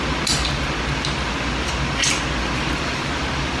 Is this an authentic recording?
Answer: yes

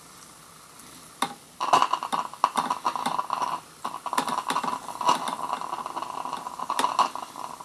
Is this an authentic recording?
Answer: yes